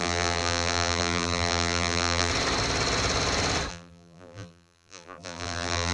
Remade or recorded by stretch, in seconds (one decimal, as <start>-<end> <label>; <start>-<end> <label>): 0.0-2.3 remade; 2.3-3.7 recorded; 3.7-5.9 remade